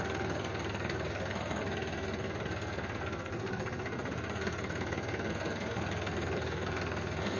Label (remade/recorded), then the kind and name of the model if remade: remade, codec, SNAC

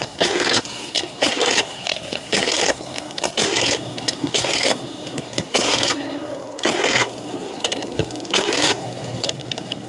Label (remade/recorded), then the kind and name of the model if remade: remade, codec, SNAC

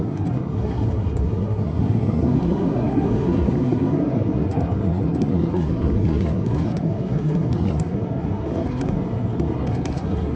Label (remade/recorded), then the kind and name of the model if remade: remade, codec, SNAC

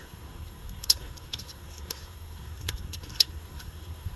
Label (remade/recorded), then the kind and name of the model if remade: remade, codec, SNAC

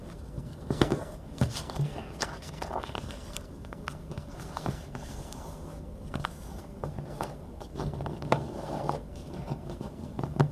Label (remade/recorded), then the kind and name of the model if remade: remade, codec, SNAC